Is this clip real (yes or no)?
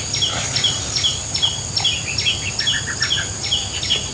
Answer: yes